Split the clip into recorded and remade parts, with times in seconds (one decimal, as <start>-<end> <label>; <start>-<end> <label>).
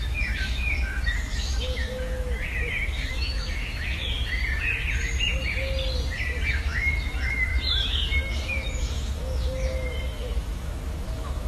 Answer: 0.0-4.4 remade; 4.4-6.5 recorded; 6.5-11.5 remade